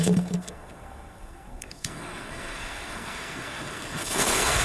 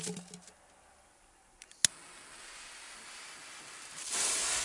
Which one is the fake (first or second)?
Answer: first